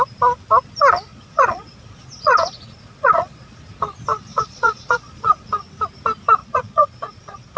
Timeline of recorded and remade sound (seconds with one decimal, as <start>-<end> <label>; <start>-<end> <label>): 0.0-1.1 recorded; 1.1-3.6 remade; 3.6-4.3 recorded; 4.3-5.5 remade; 5.5-6.4 recorded; 6.4-7.6 remade